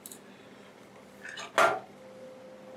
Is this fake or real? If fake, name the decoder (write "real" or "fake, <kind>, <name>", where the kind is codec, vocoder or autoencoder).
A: real